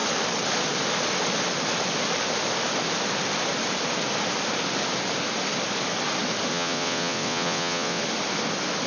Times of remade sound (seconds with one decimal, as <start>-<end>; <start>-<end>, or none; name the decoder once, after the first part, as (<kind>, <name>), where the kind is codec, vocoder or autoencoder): 6.5-8.0 (vocoder, WaveNeXt)